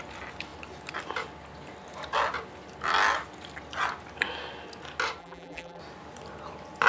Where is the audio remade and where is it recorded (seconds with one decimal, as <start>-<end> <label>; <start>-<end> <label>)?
0.0-5.2 recorded; 5.2-5.8 remade; 5.8-6.9 recorded